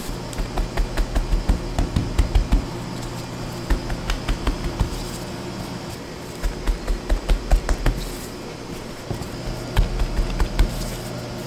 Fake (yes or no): no